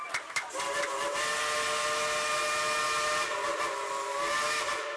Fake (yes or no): no